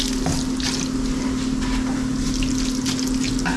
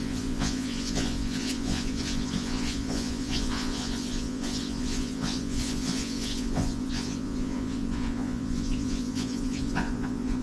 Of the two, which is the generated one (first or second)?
second